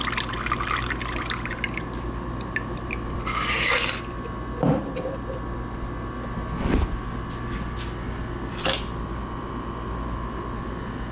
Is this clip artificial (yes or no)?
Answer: no